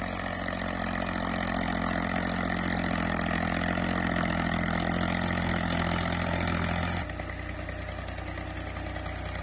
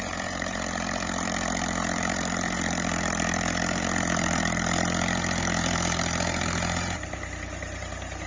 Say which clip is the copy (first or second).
second